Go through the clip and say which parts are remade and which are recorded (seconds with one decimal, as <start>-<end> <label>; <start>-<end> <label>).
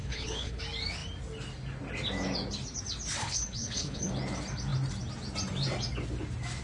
0.0-0.6 remade; 0.6-3.2 recorded; 3.2-4.1 remade; 4.1-6.6 recorded